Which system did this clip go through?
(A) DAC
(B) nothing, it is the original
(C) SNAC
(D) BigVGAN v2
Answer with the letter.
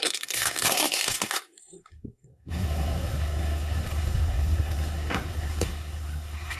C